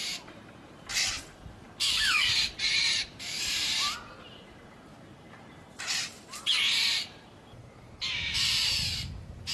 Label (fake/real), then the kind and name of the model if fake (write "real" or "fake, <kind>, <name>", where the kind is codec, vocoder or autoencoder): fake, vocoder, BigVGAN v2